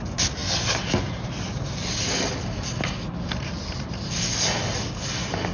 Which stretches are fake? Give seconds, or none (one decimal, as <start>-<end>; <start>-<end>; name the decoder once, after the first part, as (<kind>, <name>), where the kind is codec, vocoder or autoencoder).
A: none